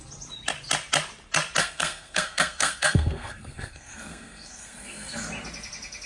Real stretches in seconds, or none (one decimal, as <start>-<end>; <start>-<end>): 0.0-1.6; 5.3-6.1